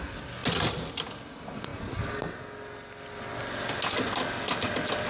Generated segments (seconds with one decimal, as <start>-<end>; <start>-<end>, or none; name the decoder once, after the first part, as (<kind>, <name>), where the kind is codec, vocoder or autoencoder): none